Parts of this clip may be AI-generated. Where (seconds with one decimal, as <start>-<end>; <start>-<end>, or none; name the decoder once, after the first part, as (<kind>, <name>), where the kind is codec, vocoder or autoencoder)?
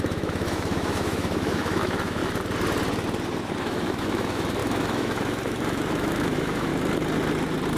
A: 0.0-2.2 (autoencoder, DAC-VAE); 3.6-6.7